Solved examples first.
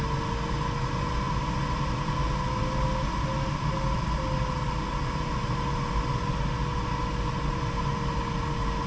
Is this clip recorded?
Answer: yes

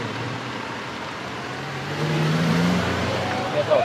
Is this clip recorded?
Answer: no